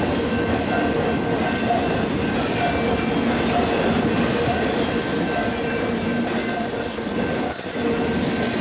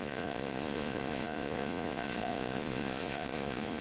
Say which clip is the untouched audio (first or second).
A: first